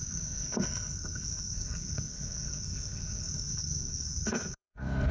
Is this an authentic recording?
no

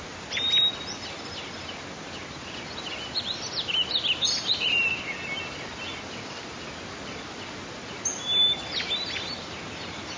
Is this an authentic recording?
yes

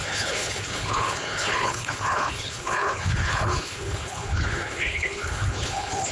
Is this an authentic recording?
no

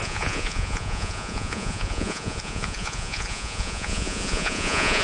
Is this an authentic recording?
no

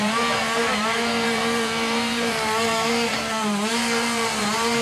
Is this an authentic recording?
no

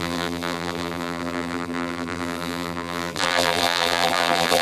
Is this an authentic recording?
no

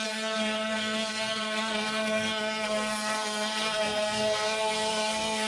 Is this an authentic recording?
no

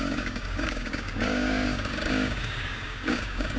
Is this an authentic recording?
no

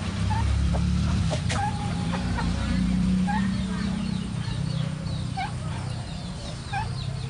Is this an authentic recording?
no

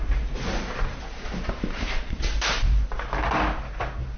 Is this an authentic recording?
yes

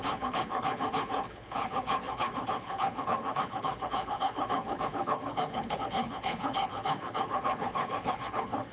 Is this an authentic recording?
no